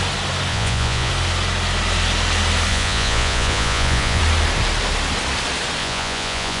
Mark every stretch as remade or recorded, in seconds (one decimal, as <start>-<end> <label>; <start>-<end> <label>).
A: 0.0-0.5 recorded; 0.5-1.1 remade; 1.1-2.7 recorded; 2.7-4.2 remade; 4.2-5.8 recorded; 5.8-6.6 remade